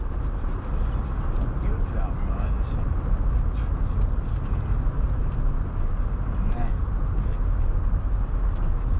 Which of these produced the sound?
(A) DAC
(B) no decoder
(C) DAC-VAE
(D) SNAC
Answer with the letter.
B